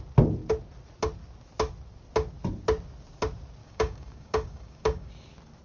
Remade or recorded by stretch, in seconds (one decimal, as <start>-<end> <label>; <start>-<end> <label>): 0.0-3.6 recorded; 3.6-5.1 remade; 5.1-5.6 recorded